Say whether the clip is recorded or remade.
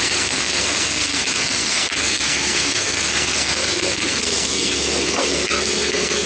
remade